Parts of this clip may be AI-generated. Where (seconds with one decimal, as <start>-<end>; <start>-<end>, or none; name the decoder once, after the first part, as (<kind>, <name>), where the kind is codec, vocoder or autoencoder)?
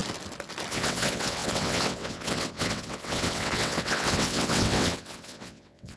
0.7-6.0 (vocoder, WaveNeXt)